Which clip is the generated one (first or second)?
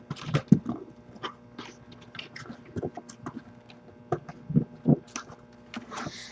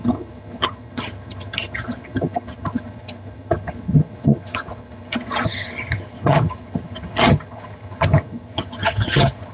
second